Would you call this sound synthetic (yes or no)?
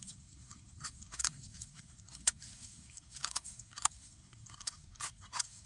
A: yes